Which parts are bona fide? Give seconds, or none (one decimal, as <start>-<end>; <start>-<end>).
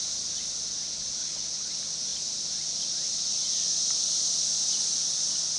0.0-1.2; 1.7-5.6